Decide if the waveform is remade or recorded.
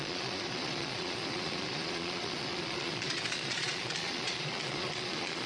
remade